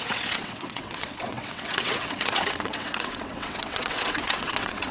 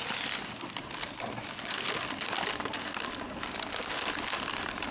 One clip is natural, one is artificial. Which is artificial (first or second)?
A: first